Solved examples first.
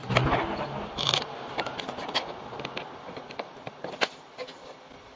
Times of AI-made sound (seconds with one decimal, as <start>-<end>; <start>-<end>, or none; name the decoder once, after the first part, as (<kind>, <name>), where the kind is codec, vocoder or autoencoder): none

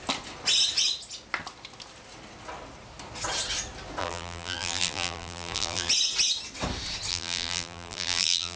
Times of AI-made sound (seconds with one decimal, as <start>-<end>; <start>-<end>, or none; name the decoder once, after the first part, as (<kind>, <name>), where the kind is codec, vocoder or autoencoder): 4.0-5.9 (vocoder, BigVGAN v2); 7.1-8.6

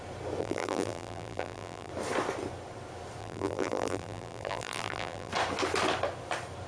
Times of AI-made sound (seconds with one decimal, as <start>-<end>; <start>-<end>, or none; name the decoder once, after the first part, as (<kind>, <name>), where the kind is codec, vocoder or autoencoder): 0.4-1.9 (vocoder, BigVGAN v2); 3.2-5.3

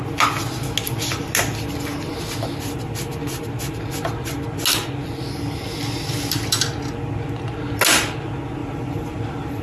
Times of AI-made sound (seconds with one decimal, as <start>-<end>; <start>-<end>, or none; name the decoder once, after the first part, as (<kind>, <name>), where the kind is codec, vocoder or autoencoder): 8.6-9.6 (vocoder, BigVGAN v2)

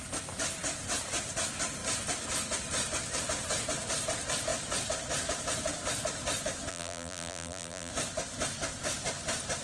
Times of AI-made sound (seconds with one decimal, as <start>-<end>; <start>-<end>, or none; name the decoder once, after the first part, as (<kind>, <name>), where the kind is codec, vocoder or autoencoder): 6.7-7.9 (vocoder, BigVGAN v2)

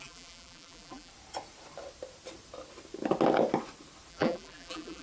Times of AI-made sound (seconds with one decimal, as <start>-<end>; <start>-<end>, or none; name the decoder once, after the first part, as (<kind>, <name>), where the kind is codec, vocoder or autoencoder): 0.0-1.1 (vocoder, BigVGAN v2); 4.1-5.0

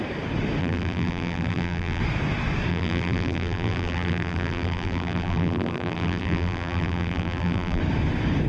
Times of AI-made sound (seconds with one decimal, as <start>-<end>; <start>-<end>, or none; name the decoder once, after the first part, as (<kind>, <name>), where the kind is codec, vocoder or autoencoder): 0.6-2.0 (vocoder, BigVGAN v2); 2.7-7.8

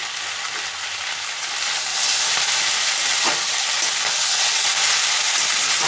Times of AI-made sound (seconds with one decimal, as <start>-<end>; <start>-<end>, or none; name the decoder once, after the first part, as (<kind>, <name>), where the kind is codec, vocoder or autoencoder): 1.9-3.9 (vocoder, BigVGAN v2)